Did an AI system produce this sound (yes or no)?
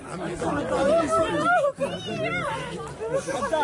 no